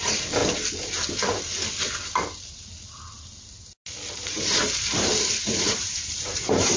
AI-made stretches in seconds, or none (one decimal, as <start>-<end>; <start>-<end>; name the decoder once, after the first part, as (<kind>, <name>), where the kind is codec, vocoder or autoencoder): 0.0-0.4 (vocoder, BigVGAN v2); 4.2-6.8